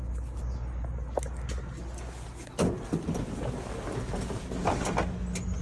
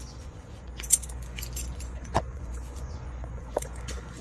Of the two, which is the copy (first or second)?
second